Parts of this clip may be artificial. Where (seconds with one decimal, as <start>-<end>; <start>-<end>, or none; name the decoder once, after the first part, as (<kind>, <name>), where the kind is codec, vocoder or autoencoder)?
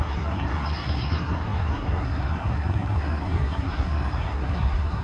0.0-5.0 (codec, SNAC)